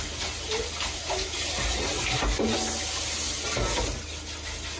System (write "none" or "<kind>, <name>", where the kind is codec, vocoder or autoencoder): none